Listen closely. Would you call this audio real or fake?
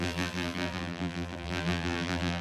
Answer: fake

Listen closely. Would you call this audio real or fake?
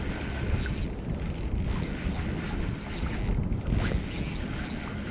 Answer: real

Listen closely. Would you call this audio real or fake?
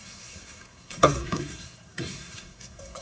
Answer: fake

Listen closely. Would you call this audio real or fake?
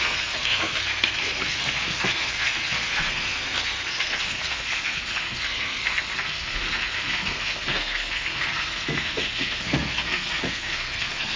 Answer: fake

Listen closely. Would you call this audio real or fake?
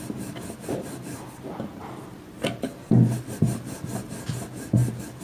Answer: real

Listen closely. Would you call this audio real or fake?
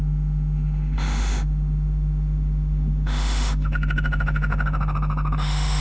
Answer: fake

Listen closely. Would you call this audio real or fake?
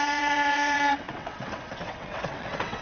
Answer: fake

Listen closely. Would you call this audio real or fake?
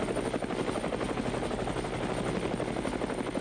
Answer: real